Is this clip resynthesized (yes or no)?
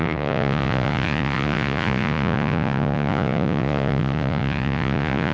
yes